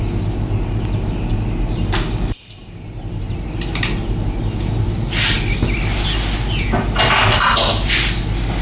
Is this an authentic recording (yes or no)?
yes